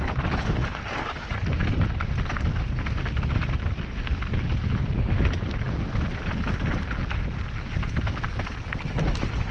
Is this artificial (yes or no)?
no